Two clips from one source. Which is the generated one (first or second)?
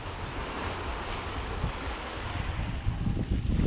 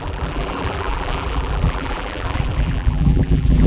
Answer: second